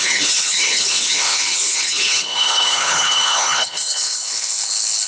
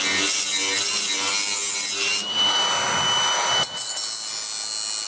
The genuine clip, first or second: second